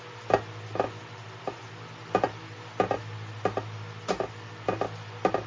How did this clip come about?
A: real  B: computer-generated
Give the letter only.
A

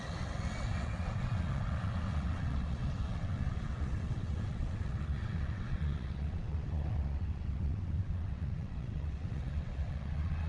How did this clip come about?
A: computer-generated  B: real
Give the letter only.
A